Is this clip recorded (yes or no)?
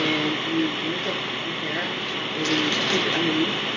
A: yes